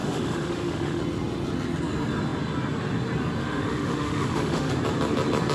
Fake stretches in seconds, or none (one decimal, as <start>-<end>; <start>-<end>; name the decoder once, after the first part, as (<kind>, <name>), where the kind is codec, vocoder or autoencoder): 0.0-1.0 (autoencoder, DAC-VAE); 3.4-4.7